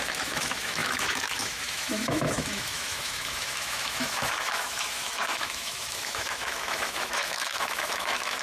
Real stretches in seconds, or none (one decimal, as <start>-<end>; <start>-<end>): none